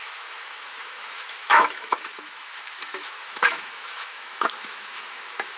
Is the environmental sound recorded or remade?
remade